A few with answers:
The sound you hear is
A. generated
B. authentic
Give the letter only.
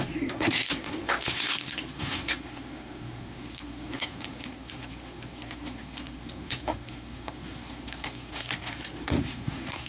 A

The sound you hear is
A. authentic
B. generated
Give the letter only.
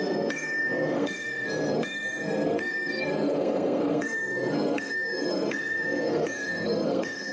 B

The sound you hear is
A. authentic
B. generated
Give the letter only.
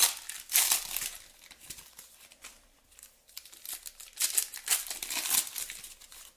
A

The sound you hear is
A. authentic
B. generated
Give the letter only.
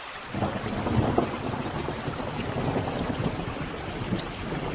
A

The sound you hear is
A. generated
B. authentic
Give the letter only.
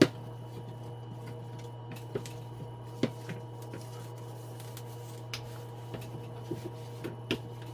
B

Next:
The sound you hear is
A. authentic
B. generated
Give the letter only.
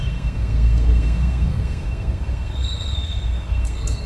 B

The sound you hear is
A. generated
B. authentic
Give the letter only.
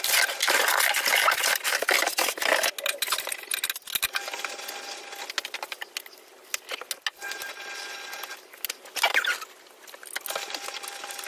B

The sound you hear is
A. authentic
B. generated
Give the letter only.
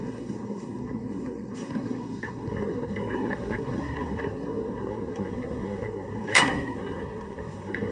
B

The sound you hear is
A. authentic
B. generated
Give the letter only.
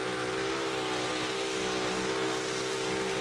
A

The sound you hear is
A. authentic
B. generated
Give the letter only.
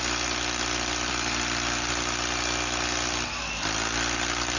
A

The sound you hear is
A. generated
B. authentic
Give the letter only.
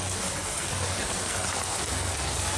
A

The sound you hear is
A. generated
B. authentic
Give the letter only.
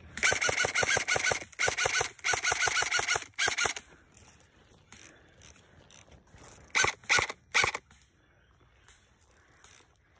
B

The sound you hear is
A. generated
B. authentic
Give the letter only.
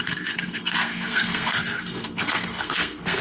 A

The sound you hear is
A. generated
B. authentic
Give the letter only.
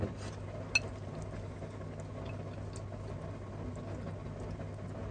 B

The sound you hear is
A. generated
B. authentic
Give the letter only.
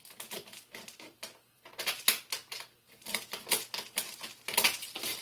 B